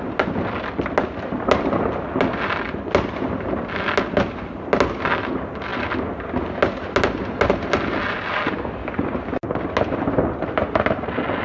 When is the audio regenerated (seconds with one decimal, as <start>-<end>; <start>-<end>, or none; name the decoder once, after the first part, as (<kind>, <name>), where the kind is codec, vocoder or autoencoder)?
none